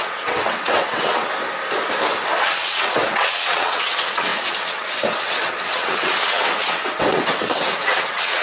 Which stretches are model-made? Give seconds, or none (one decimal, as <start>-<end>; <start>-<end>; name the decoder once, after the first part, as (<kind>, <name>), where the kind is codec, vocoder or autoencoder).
0.0-1.3 (vocoder, WaveNeXt); 2.4-8.4